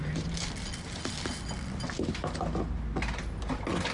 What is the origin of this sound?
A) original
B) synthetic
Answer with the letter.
A